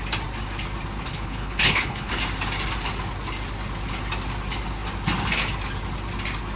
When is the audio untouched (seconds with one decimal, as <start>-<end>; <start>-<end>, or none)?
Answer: 0.0-1.1; 2.1-6.6